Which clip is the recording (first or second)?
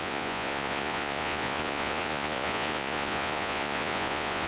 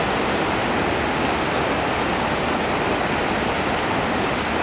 second